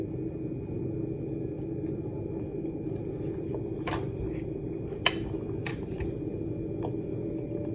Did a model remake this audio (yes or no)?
no